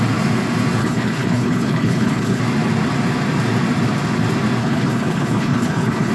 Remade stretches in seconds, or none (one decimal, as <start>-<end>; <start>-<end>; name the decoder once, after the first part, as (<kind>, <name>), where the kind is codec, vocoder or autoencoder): 0.8-2.4 (codec, HILCodec); 4.6-6.1